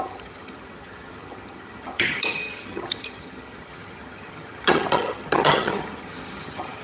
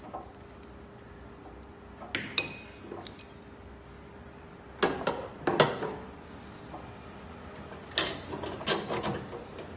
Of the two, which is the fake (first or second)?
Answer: first